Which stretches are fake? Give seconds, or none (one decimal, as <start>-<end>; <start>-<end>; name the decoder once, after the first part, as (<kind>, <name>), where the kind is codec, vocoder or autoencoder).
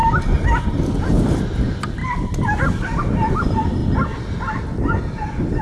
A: none